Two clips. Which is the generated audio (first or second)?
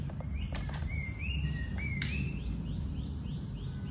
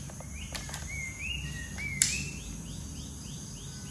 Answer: first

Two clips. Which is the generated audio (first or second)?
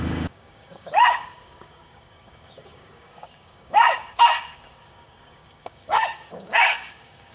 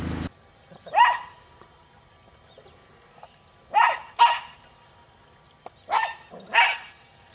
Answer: first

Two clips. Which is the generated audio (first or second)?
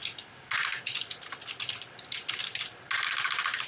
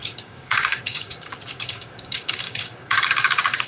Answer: second